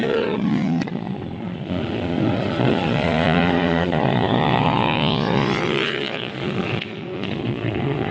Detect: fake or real fake